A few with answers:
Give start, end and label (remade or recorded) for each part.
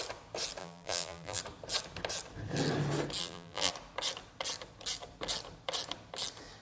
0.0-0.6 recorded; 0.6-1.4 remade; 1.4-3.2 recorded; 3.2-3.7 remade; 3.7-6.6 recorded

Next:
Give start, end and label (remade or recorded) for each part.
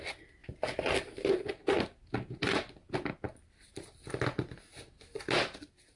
0.0-6.0 recorded